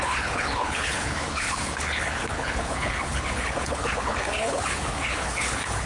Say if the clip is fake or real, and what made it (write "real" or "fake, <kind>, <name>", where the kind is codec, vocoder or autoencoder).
fake, codec, HILCodec